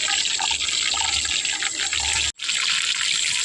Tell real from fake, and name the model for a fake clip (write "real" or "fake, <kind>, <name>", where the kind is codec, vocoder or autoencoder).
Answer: real